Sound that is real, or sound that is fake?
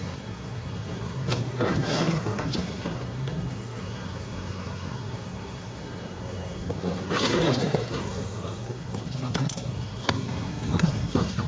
fake